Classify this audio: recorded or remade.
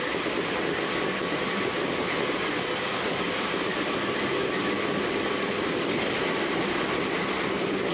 recorded